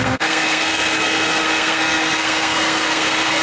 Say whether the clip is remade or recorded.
remade